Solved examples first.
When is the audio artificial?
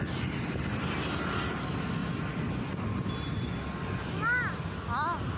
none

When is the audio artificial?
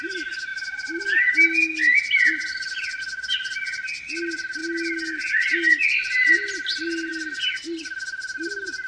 none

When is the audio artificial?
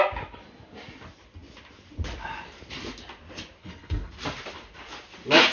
3.6-4.1 (codec, HILCodec)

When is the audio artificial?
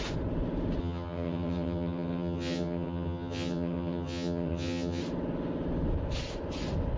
0.8-5.0 (vocoder, HiFi-GAN)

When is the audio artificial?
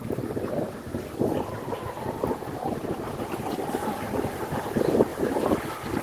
0.0-0.9 (vocoder, BigVGAN v2); 4.5-6.0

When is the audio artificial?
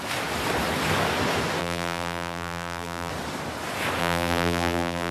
1.6-3.1 (vocoder, BigVGAN v2); 4.0-5.1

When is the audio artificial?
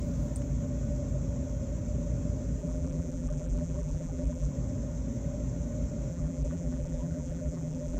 2.6-4.5 (vocoder, BigVGAN v2); 6.1-8.0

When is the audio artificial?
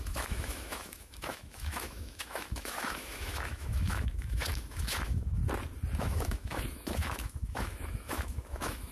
0.0-5.4 (autoencoder, DAC-VAE); 6.0-8.9